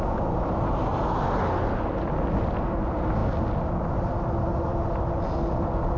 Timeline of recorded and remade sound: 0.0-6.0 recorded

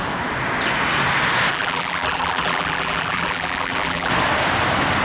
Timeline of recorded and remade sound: 0.0-1.5 recorded; 1.5-4.1 remade; 4.1-5.0 recorded

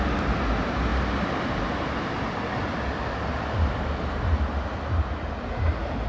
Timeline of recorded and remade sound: 0.0-6.1 recorded

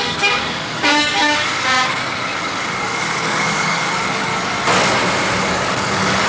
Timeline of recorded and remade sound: 0.0-4.3 remade; 4.3-5.4 recorded; 5.4-6.3 remade

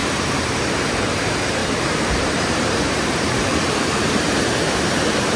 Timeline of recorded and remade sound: 0.0-1.6 remade; 1.6-2.1 recorded; 2.1-3.5 remade; 3.5-4.0 recorded; 4.0-5.4 remade